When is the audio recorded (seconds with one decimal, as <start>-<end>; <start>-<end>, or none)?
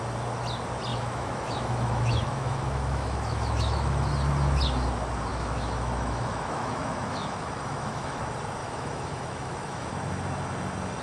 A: 0.0-0.9; 4.1-5.3; 8.2-8.6; 9.9-11.0